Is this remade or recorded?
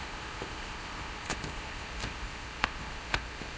remade